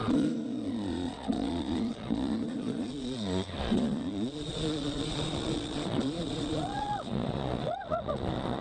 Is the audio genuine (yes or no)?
no